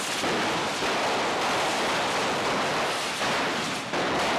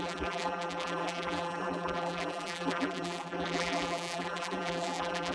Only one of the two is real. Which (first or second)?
first